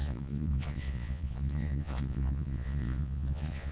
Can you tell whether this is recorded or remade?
remade